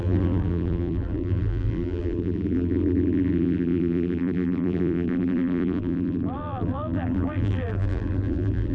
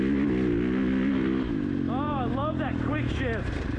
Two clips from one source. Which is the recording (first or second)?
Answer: second